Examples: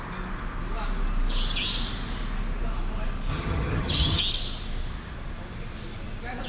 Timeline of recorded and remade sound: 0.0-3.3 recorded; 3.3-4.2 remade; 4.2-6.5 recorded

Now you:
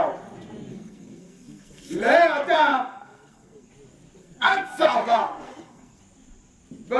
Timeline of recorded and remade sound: 0.0-0.7 recorded; 0.7-2.0 remade; 2.0-2.7 recorded; 2.7-3.7 remade; 3.7-4.2 recorded; 4.2-6.0 remade; 6.0-7.0 recorded

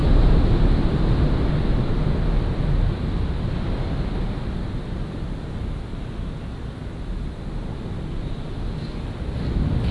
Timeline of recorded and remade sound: 0.0-9.9 recorded

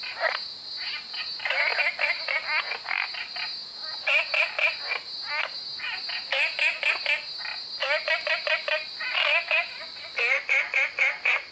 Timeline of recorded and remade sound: 0.0-11.5 recorded

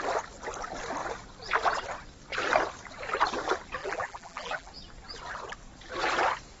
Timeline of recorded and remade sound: 0.0-3.8 recorded; 3.8-4.7 remade; 4.7-6.6 recorded